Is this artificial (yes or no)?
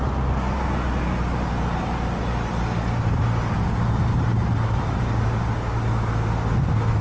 no